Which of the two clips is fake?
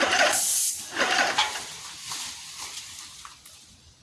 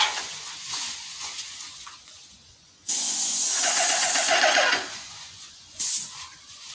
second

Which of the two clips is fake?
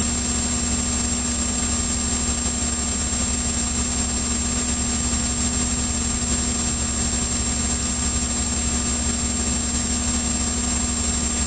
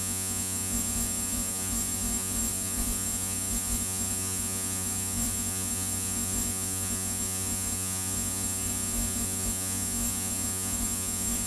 second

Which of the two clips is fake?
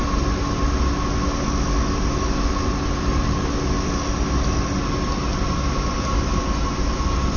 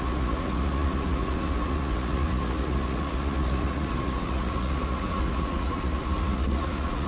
second